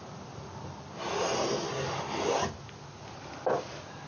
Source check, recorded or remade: recorded